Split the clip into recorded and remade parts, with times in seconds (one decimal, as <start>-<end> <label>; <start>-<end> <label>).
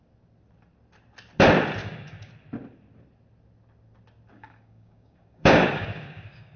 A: 0.0-1.8 recorded; 1.8-2.3 remade; 2.3-4.3 recorded; 4.3-6.6 remade